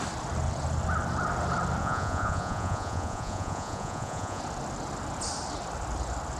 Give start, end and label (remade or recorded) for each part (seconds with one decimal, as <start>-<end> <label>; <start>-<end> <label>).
0.0-1.8 recorded; 1.8-4.4 remade; 4.4-6.4 recorded